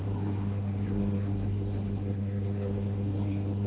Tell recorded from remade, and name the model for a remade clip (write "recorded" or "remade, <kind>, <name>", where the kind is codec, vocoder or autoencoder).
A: remade, codec, SNAC